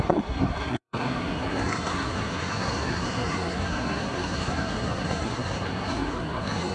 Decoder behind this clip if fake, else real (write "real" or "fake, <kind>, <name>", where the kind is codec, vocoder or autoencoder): fake, codec, SNAC